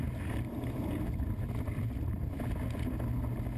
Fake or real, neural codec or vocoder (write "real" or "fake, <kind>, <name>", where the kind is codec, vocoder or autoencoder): real